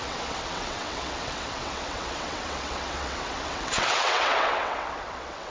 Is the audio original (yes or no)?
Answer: no